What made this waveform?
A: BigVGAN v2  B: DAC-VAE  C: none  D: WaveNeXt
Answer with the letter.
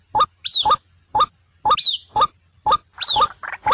C